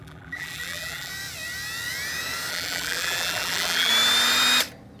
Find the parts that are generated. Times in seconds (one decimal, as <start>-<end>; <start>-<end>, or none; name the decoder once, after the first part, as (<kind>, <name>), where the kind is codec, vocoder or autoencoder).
0.0-1.1 (vocoder, BigVGAN v2); 2.5-3.9